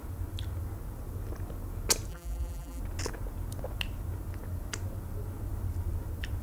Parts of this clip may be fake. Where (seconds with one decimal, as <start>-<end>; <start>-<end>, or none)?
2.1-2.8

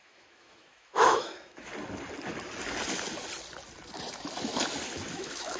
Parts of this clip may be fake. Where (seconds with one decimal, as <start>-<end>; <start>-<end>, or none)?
0.0-1.7; 5.1-5.6

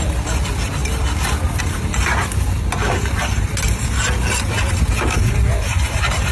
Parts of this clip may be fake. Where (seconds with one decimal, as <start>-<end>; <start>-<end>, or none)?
none

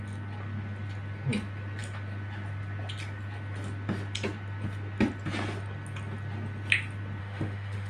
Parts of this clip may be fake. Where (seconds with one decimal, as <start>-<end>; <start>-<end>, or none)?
7.2-7.9